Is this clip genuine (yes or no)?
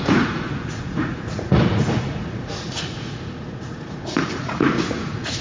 no